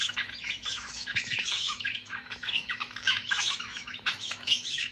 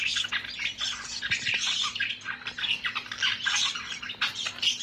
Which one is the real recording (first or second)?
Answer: second